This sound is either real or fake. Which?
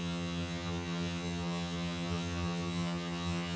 fake